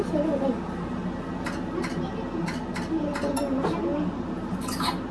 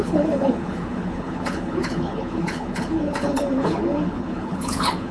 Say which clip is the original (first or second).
first